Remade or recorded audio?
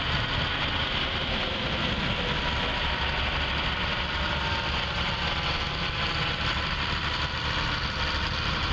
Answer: recorded